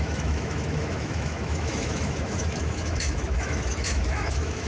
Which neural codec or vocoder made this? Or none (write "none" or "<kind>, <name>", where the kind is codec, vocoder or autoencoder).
autoencoder, DAC-VAE